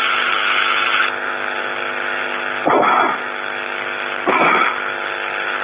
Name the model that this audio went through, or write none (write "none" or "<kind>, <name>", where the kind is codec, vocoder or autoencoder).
none